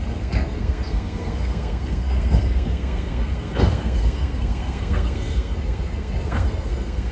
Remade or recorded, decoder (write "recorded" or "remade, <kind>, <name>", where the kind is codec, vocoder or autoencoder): remade, codec, SNAC